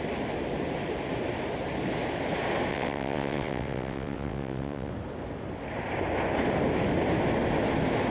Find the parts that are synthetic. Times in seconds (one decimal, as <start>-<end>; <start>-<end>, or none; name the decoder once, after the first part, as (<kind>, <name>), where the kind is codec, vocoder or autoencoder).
2.7-4.9 (vocoder, WaveNeXt)

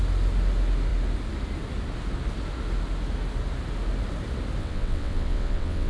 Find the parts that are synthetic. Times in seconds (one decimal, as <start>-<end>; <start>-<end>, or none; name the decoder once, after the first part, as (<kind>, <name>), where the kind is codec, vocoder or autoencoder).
4.6-5.9 (vocoder, WaveNeXt)

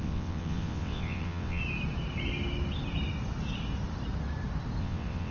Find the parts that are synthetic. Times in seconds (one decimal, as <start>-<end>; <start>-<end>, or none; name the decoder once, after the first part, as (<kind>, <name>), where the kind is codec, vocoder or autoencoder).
0.0-1.6 (vocoder, WaveNeXt); 4.8-5.3

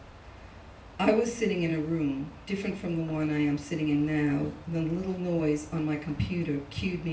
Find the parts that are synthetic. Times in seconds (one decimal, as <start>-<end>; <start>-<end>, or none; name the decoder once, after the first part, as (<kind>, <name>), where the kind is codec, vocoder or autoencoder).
none